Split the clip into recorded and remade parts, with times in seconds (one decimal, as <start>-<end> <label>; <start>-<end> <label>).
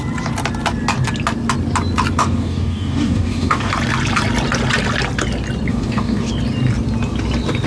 0.0-2.2 recorded; 2.2-3.7 remade; 3.7-5.7 recorded; 5.7-6.3 remade; 6.3-7.7 recorded